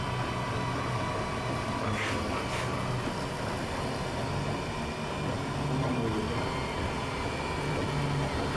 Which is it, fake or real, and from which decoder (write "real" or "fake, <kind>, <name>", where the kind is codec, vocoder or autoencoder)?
real